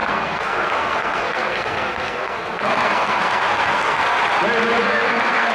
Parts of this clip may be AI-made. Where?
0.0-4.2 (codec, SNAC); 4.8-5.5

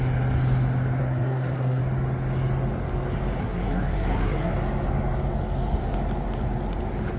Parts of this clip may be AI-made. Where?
1.0-1.8 (codec, SNAC); 3.4-4.5

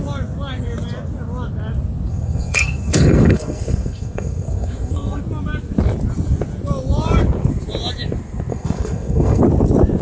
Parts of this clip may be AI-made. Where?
2.1-5.2 (codec, SNAC); 8.5-9.4

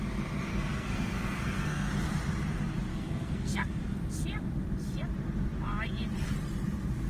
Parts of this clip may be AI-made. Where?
0.5-1.9 (codec, SNAC); 2.9-3.8

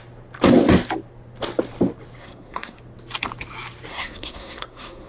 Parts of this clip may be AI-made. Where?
2.2-2.8 (codec, SNAC); 3.9-5.1